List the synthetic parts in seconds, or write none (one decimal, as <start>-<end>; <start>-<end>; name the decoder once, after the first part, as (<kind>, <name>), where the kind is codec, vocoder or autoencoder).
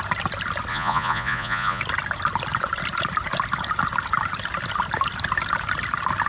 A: 0.7-1.8 (vocoder, Vocos)